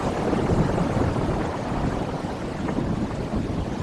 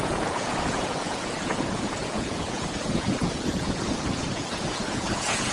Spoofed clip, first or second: second